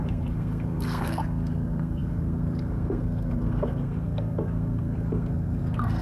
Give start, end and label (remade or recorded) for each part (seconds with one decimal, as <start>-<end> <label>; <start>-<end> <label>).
0.0-6.0 remade

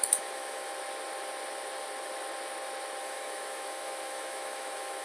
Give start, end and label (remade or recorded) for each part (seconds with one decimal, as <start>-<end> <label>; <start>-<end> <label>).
0.0-0.7 remade; 0.7-3.0 recorded; 3.0-5.0 remade

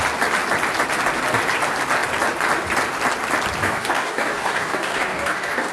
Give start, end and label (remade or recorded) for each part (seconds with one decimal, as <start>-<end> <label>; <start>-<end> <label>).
0.0-3.6 recorded; 3.6-5.7 remade

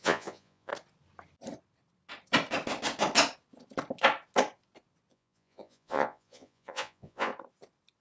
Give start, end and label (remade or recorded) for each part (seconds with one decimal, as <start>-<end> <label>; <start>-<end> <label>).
0.0-0.7 remade; 0.7-5.1 recorded; 5.1-7.3 remade; 7.3-8.0 recorded

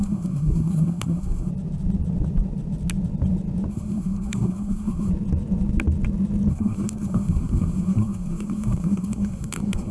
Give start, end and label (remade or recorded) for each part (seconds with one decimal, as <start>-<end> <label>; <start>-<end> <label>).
0.0-1.5 remade; 1.5-3.7 recorded; 3.7-5.1 remade; 5.1-6.5 recorded; 6.5-9.9 remade

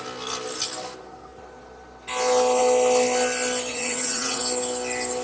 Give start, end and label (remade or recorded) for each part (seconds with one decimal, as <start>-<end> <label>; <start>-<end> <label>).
0.0-3.7 recorded; 3.7-4.4 remade; 4.4-5.2 recorded